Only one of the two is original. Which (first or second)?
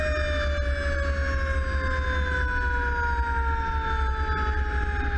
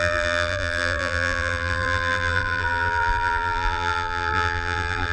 first